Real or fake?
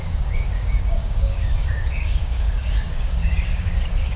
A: fake